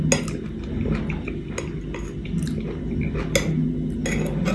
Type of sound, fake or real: real